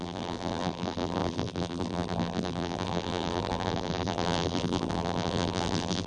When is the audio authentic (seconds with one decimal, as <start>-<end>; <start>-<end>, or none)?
none